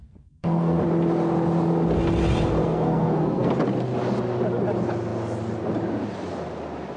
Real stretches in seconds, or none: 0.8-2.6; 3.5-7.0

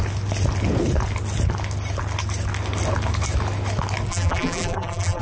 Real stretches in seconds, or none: 0.0-4.1

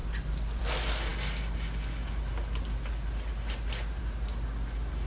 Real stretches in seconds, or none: 0.0-5.1

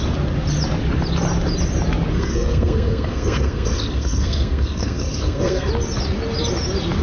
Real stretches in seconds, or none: 0.0-2.1; 5.7-7.0